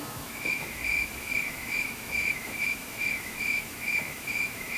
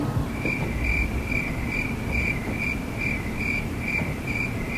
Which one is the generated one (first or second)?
first